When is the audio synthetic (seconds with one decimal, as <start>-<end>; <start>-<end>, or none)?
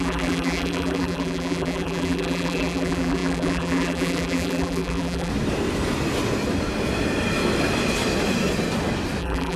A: 0.0-5.3; 9.2-9.6